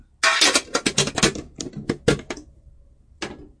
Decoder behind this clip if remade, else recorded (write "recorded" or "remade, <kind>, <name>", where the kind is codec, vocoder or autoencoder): recorded